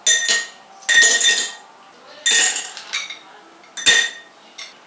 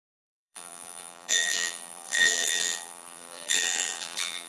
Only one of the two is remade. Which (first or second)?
second